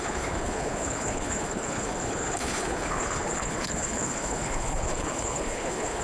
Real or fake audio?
fake